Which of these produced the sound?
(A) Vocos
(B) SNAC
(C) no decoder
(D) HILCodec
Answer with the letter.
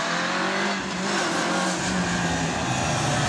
C